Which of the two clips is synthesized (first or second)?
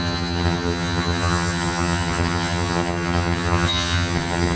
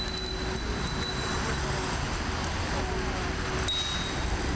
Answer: first